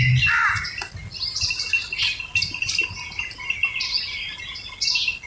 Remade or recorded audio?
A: recorded